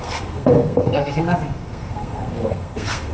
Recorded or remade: remade